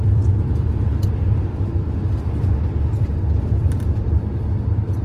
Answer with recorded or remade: remade